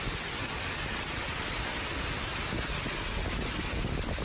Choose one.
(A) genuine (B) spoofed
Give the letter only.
A